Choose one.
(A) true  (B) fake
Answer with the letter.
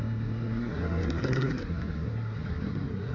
B